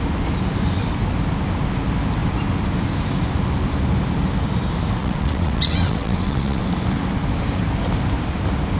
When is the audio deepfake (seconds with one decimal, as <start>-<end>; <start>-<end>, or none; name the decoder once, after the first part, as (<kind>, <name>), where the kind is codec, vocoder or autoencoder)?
5.0-6.6 (vocoder, WaveNeXt)